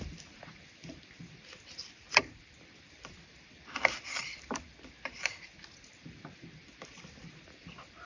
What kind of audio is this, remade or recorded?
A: remade